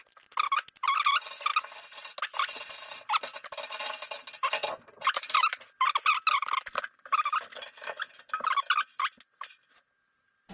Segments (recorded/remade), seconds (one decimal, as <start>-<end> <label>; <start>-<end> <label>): 0.0-10.5 recorded